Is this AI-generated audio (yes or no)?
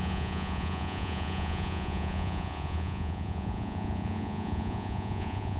yes